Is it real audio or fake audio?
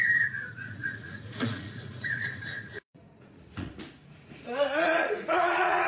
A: fake